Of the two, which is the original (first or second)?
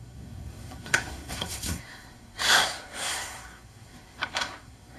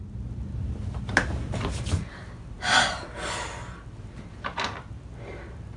second